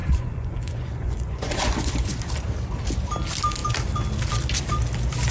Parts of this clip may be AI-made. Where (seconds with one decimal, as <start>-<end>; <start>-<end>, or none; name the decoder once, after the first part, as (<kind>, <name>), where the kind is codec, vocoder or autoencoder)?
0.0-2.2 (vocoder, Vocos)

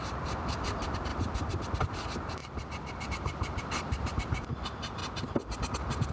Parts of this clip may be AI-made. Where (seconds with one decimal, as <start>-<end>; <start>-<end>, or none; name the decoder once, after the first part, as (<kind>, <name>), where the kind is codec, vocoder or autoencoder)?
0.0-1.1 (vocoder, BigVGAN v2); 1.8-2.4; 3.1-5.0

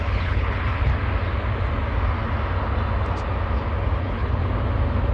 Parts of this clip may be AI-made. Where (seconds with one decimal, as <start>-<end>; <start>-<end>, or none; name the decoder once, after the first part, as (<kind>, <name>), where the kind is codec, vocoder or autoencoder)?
0.0-0.9 (codec, HILCodec); 4.0-4.4

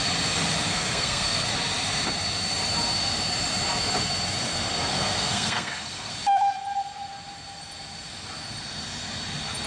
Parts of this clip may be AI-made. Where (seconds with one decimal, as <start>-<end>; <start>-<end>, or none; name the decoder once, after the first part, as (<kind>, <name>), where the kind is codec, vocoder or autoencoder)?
0.7-1.5 (codec, SNAC); 4.9-6.1

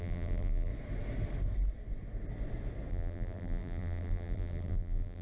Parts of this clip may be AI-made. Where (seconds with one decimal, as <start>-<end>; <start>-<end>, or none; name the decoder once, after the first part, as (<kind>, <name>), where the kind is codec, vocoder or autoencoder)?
0.0-0.7 (vocoder, BigVGAN v2); 2.9-5.2

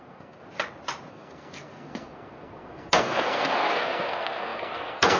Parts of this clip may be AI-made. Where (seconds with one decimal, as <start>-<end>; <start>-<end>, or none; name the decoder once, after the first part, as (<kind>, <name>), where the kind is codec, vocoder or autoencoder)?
0.0-0.4 (codec, SNAC); 1.1-5.2

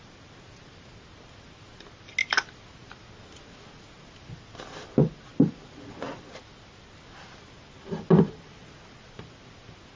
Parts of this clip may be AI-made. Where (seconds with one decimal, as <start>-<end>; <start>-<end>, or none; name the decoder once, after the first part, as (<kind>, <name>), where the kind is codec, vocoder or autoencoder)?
none

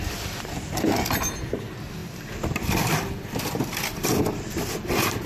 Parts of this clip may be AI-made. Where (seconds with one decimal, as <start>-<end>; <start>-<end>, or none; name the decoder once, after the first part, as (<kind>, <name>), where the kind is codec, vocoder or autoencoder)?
2.0-5.3 (vocoder, BigVGAN v2)